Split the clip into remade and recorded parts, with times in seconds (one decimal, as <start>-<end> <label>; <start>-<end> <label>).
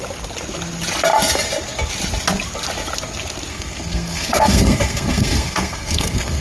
0.0-3.5 recorded; 3.5-6.4 remade